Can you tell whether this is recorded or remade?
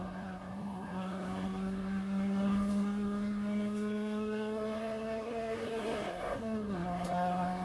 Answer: remade